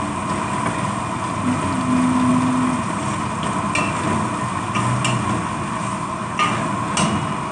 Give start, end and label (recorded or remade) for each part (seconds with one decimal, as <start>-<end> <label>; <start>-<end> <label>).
0.0-7.5 recorded

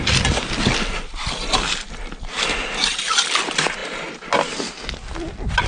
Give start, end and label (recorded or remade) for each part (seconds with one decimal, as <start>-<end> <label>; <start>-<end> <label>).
0.0-5.7 recorded

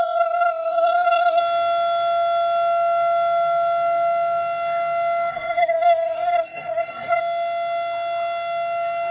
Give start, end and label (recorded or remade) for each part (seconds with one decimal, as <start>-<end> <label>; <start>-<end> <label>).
0.0-1.4 remade; 1.4-5.3 recorded; 5.3-7.2 remade; 7.2-9.1 recorded